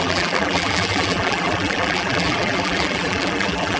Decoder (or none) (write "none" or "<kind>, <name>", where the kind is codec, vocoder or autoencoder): vocoder, BigVGAN v2